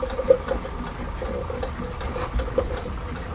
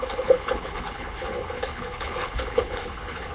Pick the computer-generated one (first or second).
second